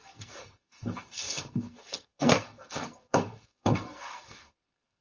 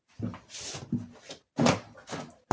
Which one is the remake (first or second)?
first